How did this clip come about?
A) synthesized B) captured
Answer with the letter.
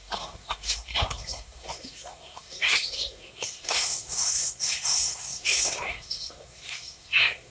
A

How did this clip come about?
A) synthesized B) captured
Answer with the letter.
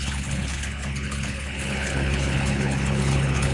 A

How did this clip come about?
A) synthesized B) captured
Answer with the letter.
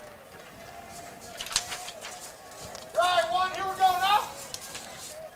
B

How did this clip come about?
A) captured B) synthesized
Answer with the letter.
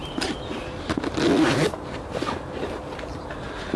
A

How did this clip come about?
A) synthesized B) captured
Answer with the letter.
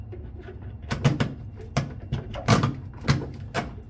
B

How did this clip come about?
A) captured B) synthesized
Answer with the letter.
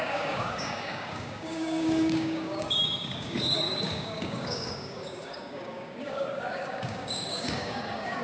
B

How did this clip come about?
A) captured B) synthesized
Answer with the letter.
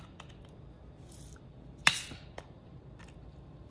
B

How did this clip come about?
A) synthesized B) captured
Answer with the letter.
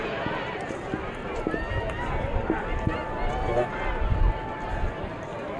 B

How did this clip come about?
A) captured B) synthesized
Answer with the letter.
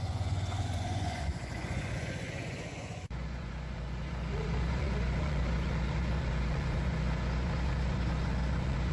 B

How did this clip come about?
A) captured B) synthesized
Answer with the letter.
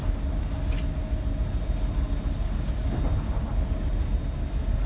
A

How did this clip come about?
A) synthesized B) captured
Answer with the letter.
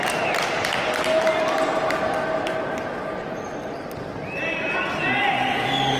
B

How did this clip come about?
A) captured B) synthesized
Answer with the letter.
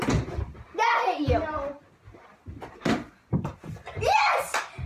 A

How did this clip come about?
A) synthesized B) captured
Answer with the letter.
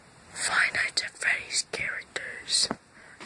B